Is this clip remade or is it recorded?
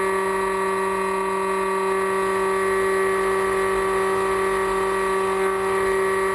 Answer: recorded